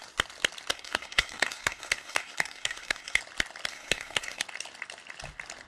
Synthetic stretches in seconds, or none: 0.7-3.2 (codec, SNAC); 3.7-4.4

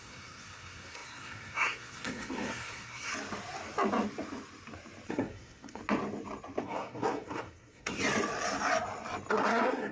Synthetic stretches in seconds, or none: 0.0-3.1 (codec, SNAC); 5.1-5.8; 6.6-8.0; 9.3-9.9